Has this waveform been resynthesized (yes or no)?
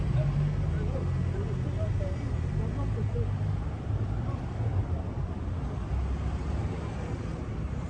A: no